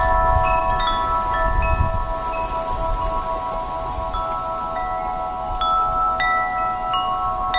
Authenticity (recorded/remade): recorded